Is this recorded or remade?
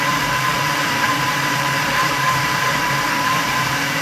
remade